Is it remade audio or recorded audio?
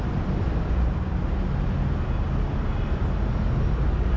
recorded